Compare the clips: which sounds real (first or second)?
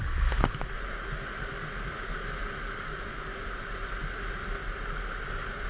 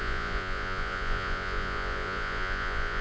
first